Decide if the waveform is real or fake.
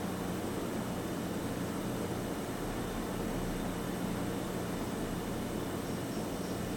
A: real